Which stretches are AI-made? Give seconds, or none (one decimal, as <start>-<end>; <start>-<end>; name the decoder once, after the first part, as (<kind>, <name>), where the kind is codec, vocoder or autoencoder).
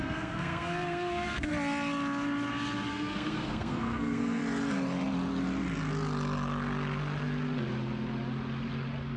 0.0-1.5 (codec, SNAC); 2.9-4.4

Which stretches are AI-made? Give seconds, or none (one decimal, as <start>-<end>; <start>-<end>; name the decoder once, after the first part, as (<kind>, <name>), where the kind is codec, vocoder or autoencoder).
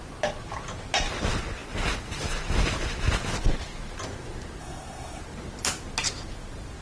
4.6-5.2 (codec, SNAC)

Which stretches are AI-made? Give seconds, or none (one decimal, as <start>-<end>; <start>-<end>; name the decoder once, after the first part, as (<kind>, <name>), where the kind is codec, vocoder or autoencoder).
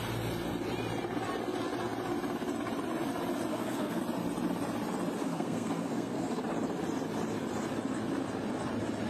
3.5-4.0 (codec, SNAC); 5.2-6.4